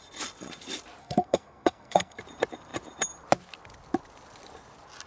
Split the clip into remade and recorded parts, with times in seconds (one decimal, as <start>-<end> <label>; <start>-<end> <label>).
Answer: 0.0-1.0 recorded; 1.0-2.2 remade; 2.2-5.1 recorded